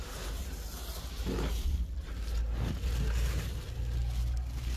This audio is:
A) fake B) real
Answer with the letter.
B